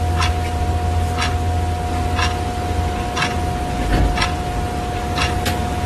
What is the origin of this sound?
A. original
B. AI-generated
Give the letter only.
A